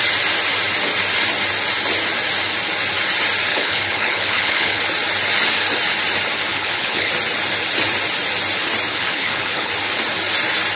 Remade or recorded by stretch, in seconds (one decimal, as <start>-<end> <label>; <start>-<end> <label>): 0.0-3.5 recorded; 3.5-4.8 remade; 4.8-6.5 recorded; 6.5-7.1 remade; 7.1-8.9 recorded; 8.9-9.7 remade; 9.7-10.8 recorded